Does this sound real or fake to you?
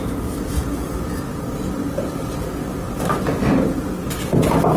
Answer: real